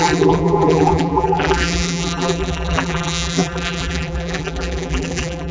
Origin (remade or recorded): remade